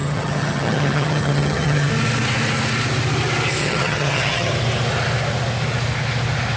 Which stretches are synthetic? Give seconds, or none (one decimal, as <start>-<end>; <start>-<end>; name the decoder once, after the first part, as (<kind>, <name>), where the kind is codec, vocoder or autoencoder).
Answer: 0.0-1.9 (vocoder, HiFi-GAN); 3.6-4.5